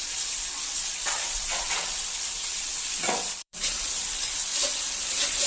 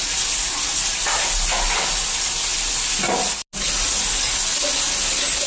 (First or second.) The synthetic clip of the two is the first